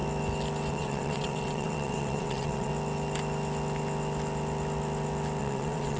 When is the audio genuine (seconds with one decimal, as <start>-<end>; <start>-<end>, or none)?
0.0-0.7; 2.7-5.4